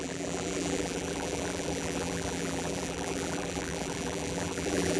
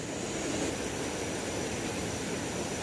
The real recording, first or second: second